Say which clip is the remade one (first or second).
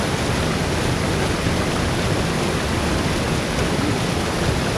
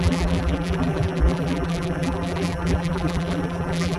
second